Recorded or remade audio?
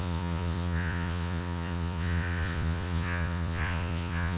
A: remade